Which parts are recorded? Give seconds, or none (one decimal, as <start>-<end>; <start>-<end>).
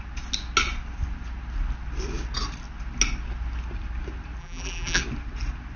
0.0-4.4; 5.0-5.8